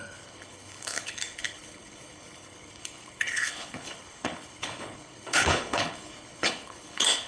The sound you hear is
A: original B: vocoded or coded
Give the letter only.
B